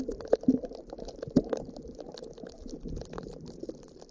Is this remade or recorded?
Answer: remade